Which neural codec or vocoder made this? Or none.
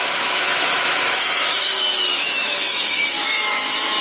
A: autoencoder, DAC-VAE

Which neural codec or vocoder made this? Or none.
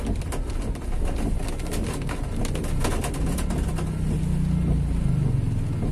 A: none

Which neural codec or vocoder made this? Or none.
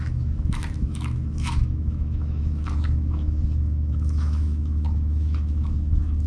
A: autoencoder, DAC-VAE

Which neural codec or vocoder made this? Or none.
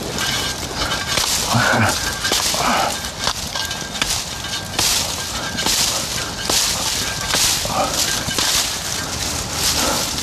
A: none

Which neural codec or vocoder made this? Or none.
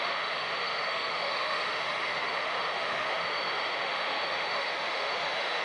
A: autoencoder, DAC-VAE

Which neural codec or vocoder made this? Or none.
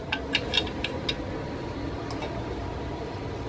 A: none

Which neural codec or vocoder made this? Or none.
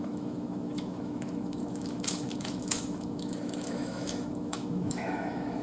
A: autoencoder, DAC-VAE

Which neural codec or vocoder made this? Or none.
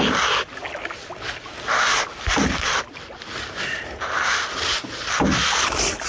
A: none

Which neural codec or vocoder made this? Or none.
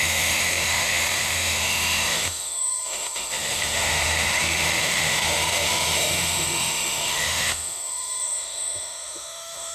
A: autoencoder, DAC-VAE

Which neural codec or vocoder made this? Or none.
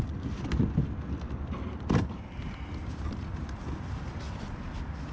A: none